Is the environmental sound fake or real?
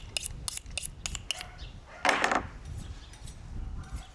real